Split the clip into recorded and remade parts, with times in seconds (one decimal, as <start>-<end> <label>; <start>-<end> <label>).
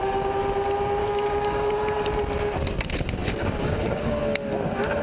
0.0-1.0 recorded; 1.0-1.7 remade; 1.7-3.2 recorded; 3.2-4.2 remade; 4.2-5.0 recorded